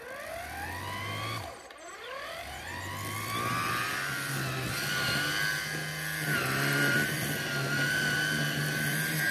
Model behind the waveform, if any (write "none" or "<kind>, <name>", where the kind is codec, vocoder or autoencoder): none